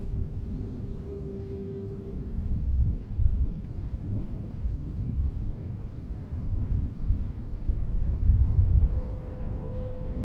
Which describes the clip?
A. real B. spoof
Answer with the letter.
B